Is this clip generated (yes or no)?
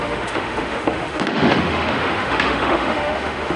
yes